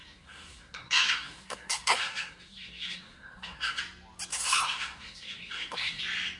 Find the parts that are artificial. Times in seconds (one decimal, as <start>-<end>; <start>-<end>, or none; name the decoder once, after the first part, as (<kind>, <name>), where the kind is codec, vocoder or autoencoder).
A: 0.0-3.8 (codec, SNAC); 4.3-6.0